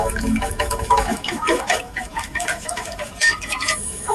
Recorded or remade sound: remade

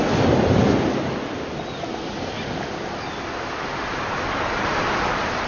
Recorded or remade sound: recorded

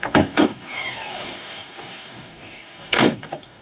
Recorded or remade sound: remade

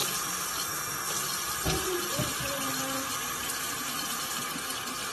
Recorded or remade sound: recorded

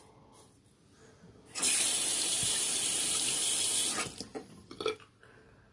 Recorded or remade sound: recorded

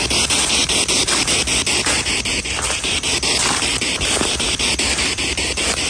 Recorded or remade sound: remade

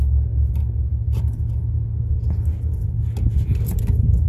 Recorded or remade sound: recorded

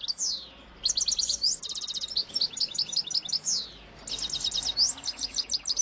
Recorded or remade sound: recorded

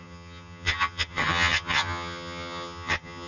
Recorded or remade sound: remade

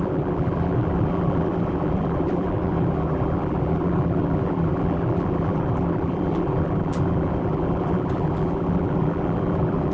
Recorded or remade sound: remade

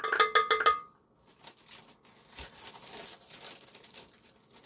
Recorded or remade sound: recorded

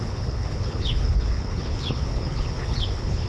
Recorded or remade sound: remade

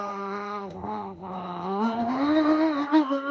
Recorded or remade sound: remade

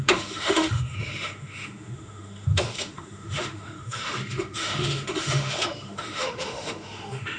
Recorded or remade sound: remade